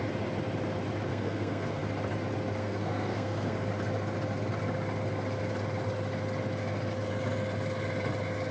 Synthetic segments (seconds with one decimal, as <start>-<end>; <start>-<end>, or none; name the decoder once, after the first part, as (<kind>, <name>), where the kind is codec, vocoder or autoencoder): 1.1-1.8 (codec, SNAC); 2.6-3.7